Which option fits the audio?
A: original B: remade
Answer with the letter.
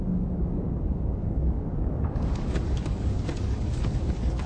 B